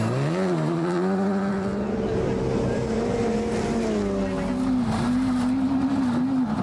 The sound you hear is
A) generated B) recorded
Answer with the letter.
B